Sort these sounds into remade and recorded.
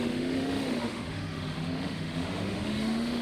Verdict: remade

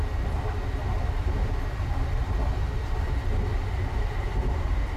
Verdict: recorded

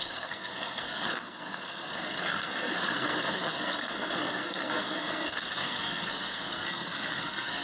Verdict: remade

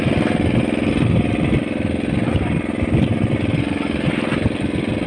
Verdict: recorded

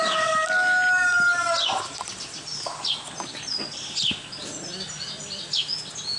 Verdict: recorded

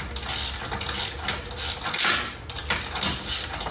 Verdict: recorded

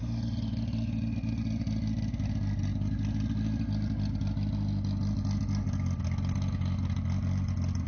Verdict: recorded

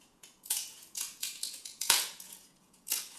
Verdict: remade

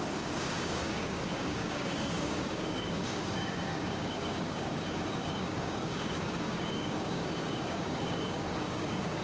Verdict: remade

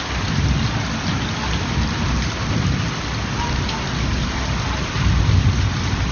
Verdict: recorded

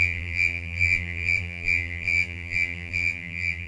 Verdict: remade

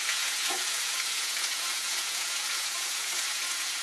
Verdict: remade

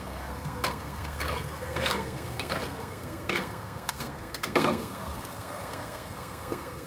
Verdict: remade